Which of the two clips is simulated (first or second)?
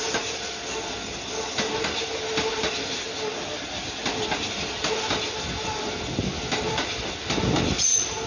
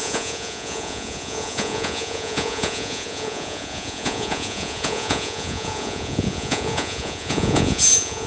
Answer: second